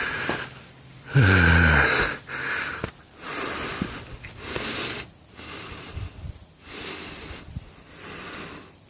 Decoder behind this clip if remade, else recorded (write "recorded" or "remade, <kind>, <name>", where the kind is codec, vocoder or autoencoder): recorded